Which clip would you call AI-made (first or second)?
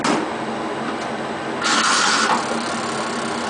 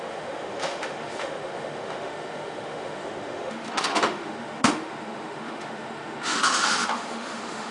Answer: second